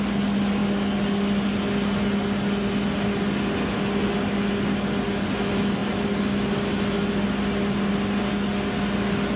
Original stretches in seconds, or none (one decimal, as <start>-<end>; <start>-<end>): 0.0-9.4